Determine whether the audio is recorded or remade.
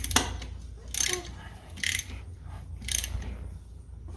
recorded